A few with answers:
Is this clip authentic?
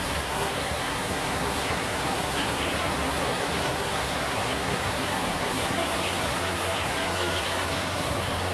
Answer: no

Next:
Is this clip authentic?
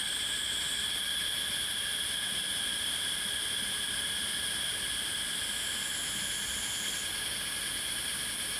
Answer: yes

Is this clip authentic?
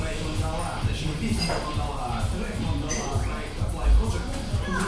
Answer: yes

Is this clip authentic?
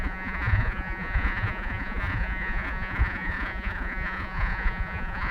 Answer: no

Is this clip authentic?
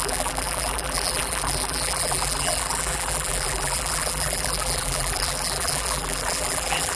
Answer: no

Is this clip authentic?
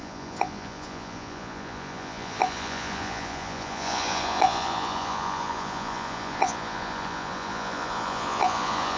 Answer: no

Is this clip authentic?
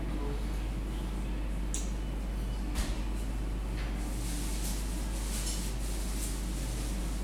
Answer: yes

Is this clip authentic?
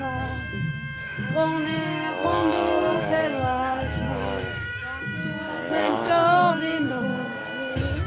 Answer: no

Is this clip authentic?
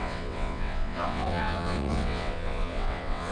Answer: no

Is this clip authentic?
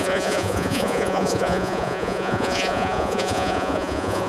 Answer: no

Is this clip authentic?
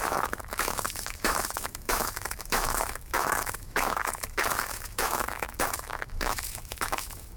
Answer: no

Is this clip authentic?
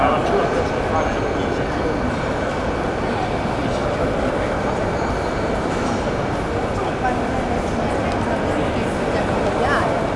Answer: yes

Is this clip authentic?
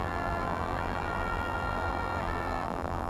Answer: no